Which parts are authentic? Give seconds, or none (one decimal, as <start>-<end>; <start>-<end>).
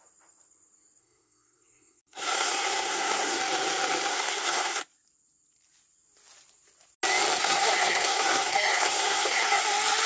0.0-1.0; 3.4-4.1; 4.8-7.4; 9.6-10.1